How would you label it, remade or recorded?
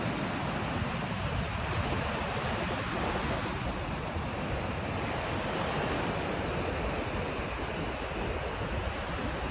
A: recorded